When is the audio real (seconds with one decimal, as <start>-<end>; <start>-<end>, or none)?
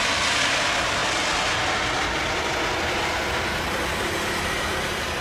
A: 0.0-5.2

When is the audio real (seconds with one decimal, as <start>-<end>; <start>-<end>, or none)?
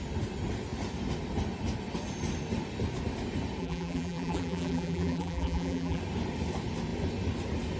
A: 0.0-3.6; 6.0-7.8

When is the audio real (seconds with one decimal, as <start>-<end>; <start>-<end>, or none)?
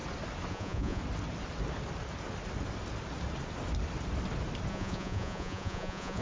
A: 0.0-0.5; 1.0-4.7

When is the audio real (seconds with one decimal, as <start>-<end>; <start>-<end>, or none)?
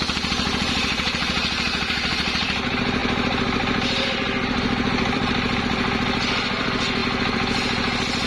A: none